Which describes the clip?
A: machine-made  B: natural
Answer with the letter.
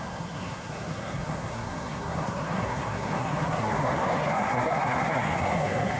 A